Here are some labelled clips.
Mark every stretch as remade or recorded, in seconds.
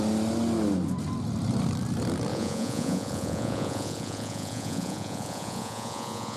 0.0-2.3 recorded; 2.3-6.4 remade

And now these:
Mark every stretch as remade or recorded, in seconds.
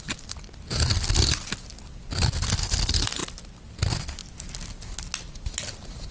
0.0-6.1 recorded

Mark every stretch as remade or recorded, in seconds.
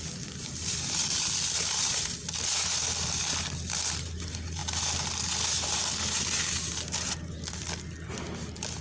0.0-8.8 remade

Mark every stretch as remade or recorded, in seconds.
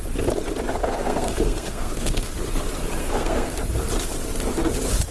0.0-0.8 recorded; 0.8-2.3 remade; 2.3-3.0 recorded; 3.0-3.6 remade; 3.6-5.1 recorded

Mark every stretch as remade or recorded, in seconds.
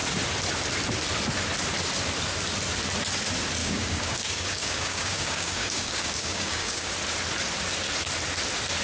0.0-3.6 recorded; 3.6-6.9 remade; 6.9-8.8 recorded